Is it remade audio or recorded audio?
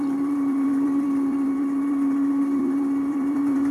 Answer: remade